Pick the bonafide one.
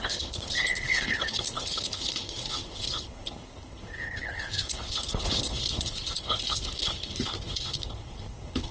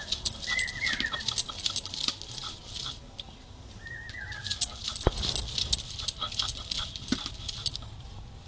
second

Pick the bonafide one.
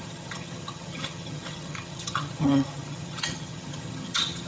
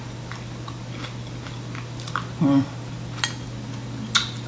second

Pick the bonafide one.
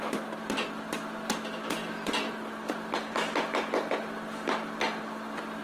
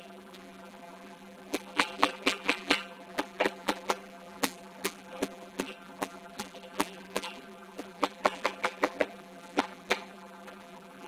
first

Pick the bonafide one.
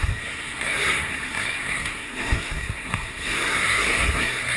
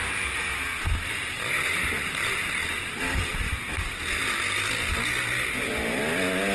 second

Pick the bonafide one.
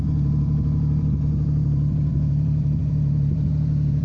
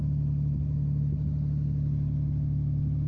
second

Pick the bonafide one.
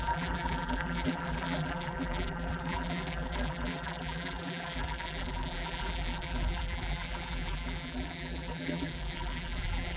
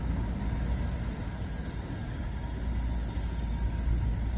second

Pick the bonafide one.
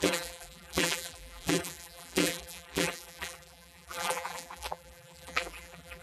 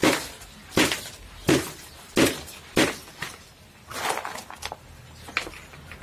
second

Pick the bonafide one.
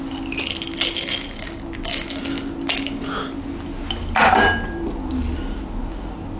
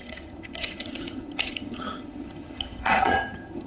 first